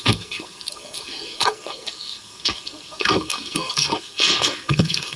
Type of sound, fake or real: fake